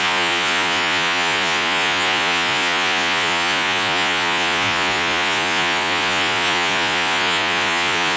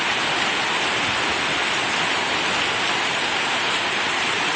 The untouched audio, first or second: second